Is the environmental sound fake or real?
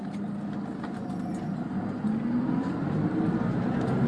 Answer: real